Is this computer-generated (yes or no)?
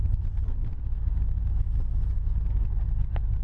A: no